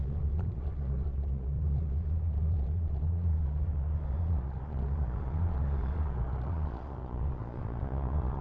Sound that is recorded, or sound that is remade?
remade